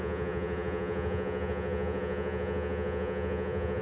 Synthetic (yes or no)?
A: yes